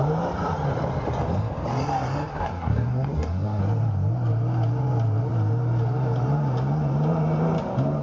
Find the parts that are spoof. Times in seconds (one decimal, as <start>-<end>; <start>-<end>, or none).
2.3-3.6